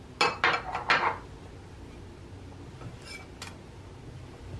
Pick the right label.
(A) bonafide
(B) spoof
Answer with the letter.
A